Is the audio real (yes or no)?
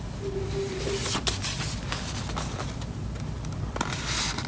yes